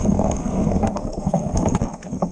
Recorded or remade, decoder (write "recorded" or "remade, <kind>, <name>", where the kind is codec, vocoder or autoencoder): remade, codec, SNAC